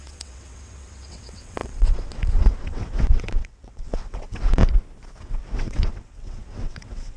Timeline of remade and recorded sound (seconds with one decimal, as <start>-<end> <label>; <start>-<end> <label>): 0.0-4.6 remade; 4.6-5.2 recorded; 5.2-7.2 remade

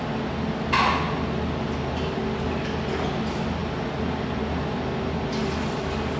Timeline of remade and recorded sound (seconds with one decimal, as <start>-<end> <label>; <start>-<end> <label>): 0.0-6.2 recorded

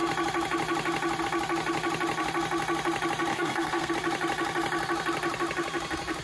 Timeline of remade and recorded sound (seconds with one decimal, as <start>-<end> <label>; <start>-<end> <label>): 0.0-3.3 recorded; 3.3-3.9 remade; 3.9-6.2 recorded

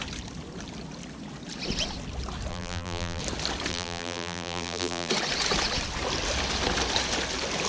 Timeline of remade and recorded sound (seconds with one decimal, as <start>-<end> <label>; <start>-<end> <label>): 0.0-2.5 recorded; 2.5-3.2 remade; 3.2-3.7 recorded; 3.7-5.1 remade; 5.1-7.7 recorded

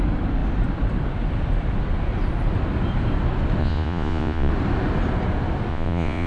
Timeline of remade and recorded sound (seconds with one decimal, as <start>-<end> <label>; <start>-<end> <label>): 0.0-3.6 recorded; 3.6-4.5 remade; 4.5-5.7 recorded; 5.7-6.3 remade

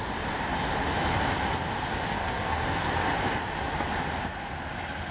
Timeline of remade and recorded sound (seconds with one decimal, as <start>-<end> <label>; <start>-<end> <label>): 0.0-2.1 recorded; 2.1-2.9 remade; 2.9-5.1 recorded

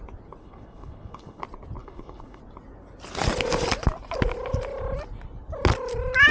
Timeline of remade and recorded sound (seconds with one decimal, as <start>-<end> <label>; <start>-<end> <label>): 0.0-0.4 recorded; 0.4-1.4 remade; 1.4-1.8 recorded; 1.8-2.4 remade; 2.4-6.3 recorded